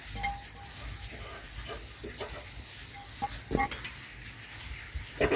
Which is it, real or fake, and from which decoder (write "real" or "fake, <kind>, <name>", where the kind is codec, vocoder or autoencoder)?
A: real